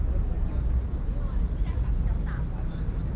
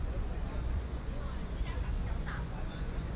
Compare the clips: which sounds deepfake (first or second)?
second